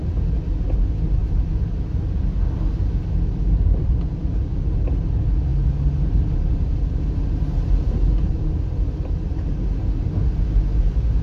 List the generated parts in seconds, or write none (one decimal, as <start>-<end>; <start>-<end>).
none